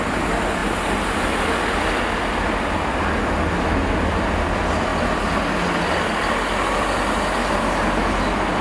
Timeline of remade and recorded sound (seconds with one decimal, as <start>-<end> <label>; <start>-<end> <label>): 0.0-8.6 recorded